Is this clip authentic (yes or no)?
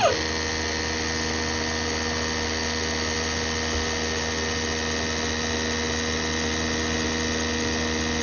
yes